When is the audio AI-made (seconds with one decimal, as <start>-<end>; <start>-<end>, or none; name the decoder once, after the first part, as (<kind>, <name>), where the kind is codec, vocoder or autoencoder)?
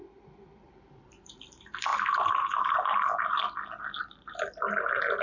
0.0-1.9 (vocoder, BigVGAN v2); 4.0-5.2